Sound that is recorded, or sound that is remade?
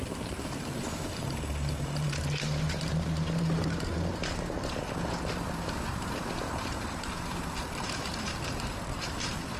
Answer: remade